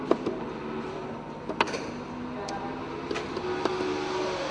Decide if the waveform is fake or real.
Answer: real